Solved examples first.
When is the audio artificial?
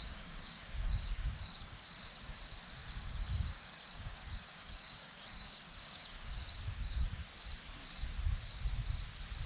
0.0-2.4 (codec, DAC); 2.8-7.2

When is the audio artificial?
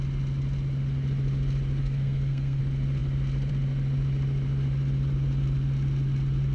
1.8-2.6 (codec, SNAC)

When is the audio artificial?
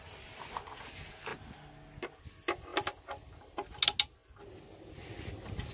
none